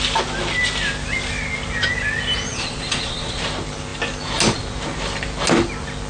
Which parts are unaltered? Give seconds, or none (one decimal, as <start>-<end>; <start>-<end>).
0.0-2.5; 3.4-6.1